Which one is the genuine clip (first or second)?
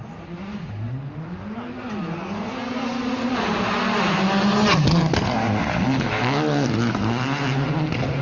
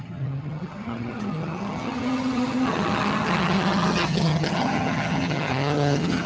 first